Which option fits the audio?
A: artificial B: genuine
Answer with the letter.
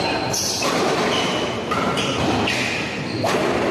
B